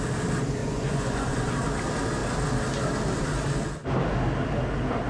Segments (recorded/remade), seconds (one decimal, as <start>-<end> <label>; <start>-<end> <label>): 0.0-0.6 recorded; 0.6-1.5 remade; 1.5-5.1 recorded